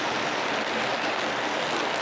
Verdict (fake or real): real